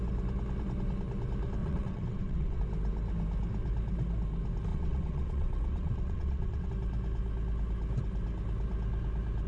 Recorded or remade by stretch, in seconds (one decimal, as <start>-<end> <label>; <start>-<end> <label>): 0.0-1.6 recorded; 1.6-2.6 remade; 2.6-4.7 recorded; 4.7-6.7 remade; 6.7-9.5 recorded